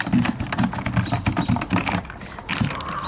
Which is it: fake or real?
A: real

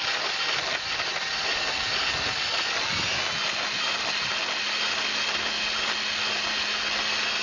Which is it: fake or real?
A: real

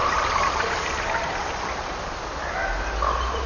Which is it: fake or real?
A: real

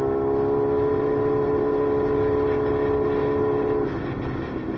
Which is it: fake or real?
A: real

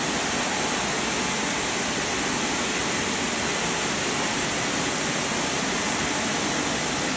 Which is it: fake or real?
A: real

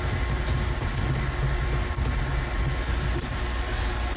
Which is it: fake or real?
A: real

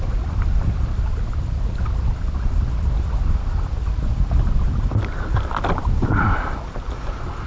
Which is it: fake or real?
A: real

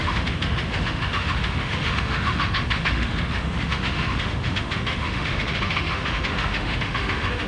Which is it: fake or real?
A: fake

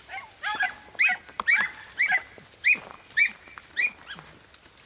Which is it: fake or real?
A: real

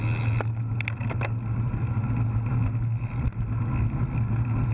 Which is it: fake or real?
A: real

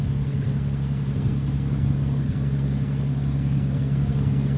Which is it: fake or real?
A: fake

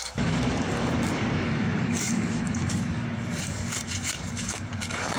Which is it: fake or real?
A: fake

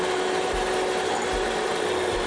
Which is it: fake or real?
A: real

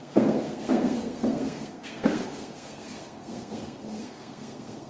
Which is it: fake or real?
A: fake